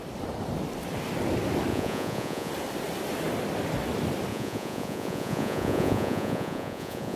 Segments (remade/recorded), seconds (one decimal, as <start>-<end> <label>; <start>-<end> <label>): 0.0-1.7 recorded; 1.7-2.5 remade; 2.5-4.3 recorded; 4.3-7.2 remade